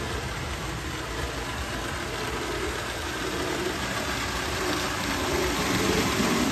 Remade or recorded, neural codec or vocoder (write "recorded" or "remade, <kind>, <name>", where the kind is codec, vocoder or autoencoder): recorded